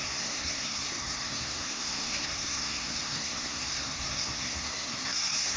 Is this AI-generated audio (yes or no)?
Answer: yes